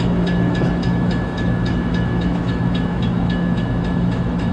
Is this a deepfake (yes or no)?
yes